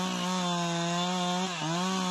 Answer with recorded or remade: recorded